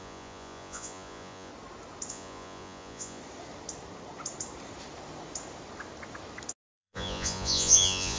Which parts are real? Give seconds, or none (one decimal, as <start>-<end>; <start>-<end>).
1.5-2.1; 3.2-6.7